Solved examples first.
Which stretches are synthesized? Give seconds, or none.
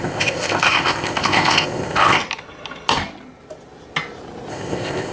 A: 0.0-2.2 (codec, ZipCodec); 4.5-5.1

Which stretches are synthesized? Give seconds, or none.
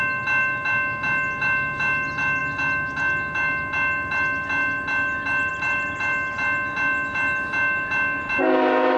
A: none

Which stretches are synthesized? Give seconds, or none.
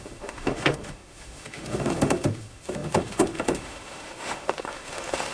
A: 0.0-5.3 (autoencoder, DAC-VAE)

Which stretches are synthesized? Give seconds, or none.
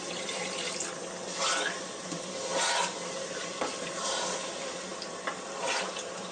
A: 0.0-2.5 (vocoder, BigVGAN v2); 3.1-6.3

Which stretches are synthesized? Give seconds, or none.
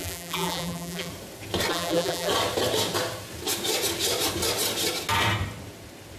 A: 0.0-1.1 (vocoder, BigVGAN v2); 1.7-2.3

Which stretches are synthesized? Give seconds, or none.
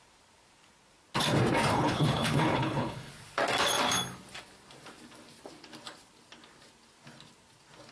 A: 1.7-3.1 (codec, HILCodec)